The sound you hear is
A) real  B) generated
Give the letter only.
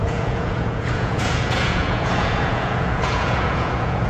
B